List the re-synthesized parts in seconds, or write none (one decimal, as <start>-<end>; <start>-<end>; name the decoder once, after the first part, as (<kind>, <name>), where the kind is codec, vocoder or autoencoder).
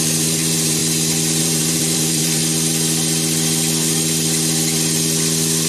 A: 0.0-0.8 (vocoder, BigVGAN v2); 1.4-2.4